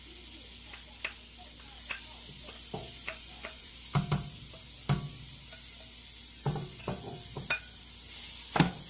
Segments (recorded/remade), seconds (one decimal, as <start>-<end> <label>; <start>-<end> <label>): 0.0-2.8 recorded; 2.8-3.7 remade; 3.7-6.6 recorded; 6.6-7.2 remade; 7.2-8.9 recorded